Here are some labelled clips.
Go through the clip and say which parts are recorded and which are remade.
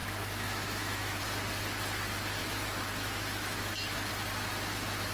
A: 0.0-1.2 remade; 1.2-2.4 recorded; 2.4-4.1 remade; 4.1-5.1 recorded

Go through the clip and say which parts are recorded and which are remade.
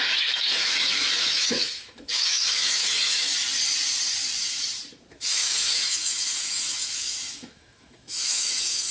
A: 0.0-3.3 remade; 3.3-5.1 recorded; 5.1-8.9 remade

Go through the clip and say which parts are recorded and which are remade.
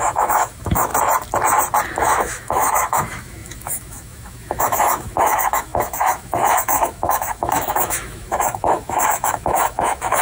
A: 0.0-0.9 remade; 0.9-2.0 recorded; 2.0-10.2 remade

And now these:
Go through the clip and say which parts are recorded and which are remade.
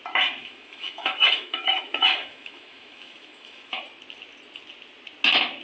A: 0.0-0.4 recorded; 0.4-3.8 remade; 3.8-5.6 recorded